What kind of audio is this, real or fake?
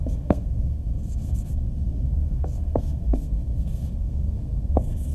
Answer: fake